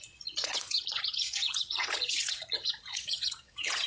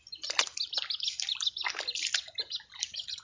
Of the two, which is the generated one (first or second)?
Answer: first